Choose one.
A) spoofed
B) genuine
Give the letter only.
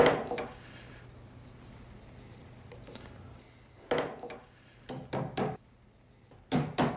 B